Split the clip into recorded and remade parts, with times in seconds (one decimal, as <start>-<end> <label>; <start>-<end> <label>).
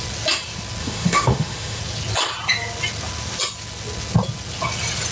0.0-0.8 recorded; 0.8-1.8 remade; 1.8-5.1 recorded